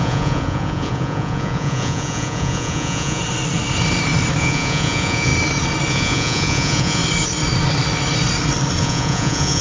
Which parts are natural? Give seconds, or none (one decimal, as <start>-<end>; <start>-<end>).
3.2-4.4; 5.3-5.9; 7.0-8.8